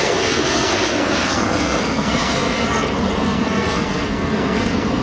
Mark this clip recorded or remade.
remade